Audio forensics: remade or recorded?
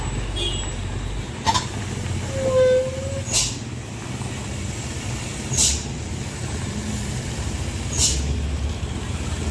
recorded